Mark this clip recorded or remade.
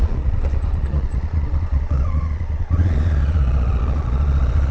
remade